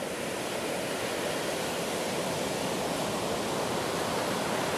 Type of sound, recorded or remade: recorded